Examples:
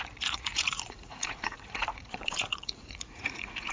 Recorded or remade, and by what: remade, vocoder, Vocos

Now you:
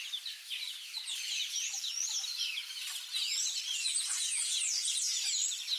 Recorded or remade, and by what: recorded